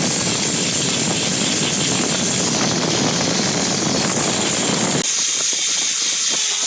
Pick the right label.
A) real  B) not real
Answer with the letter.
A